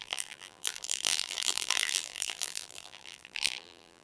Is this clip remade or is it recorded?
remade